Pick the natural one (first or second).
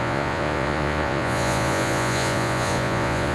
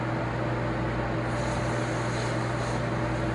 second